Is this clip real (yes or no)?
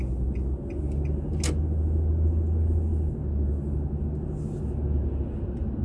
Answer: yes